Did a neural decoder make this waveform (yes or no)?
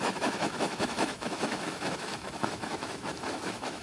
yes